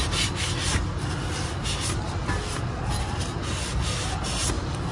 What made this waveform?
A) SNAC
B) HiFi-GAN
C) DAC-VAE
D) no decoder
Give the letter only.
D